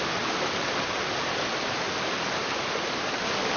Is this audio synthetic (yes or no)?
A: no